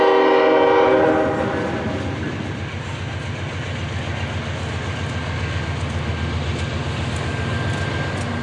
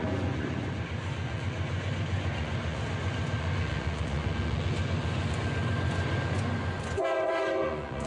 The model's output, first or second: second